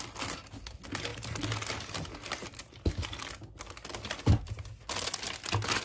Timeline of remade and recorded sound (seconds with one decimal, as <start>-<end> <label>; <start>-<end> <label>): 0.0-5.8 recorded